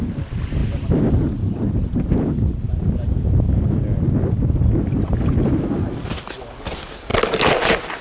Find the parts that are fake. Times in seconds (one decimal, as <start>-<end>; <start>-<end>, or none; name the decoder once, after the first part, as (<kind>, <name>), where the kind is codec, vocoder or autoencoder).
none